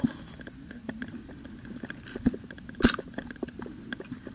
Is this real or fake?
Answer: real